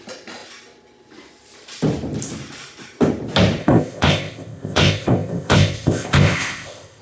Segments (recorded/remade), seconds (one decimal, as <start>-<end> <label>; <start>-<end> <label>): 0.0-3.6 recorded; 3.6-7.0 remade